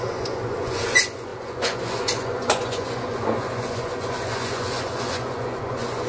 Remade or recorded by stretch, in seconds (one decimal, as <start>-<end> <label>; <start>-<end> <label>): 0.0-6.1 remade